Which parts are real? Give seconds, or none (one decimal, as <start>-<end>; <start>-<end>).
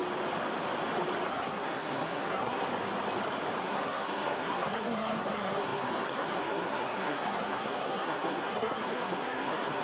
0.0-1.3; 2.7-3.6